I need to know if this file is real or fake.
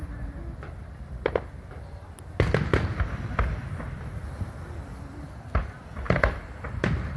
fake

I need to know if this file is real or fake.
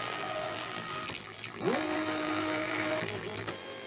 fake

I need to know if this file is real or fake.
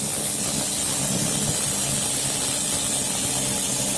real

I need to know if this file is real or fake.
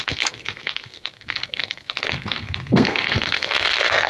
fake